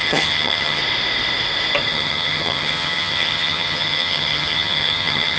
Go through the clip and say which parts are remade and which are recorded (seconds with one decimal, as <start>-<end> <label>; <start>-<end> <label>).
0.0-0.8 remade; 0.8-1.9 recorded; 1.9-5.4 remade